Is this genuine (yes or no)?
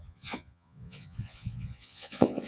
no